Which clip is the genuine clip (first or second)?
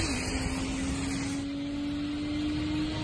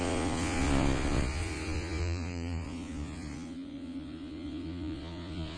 first